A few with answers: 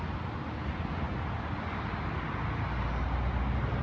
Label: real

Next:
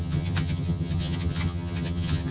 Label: fake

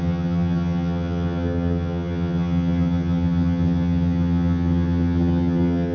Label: fake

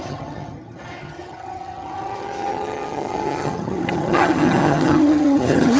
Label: fake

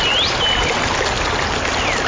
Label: real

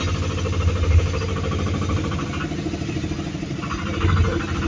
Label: real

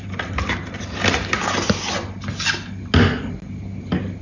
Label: real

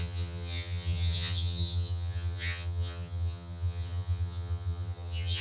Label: fake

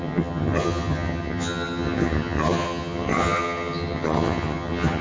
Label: fake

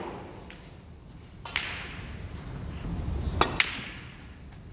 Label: real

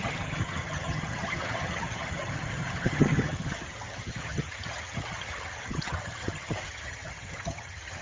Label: fake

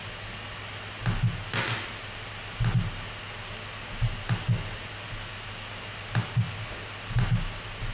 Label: real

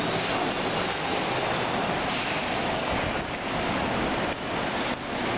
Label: real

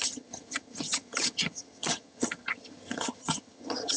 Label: fake